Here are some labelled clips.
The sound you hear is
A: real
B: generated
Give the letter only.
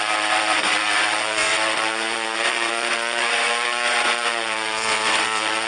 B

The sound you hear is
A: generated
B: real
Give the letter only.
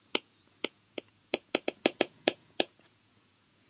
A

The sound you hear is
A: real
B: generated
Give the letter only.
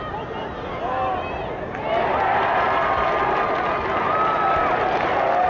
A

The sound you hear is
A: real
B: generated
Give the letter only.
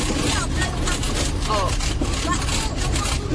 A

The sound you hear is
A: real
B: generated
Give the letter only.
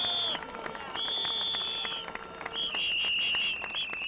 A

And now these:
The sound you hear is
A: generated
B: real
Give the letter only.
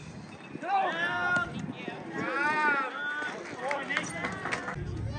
B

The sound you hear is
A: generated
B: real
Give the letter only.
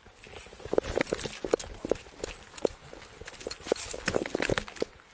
B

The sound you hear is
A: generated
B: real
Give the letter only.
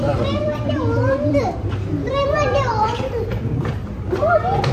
A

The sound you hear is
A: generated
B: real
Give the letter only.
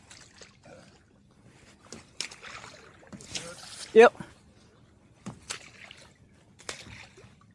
B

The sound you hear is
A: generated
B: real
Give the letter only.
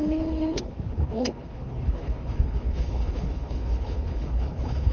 A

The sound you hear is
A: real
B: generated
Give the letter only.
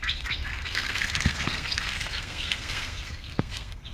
B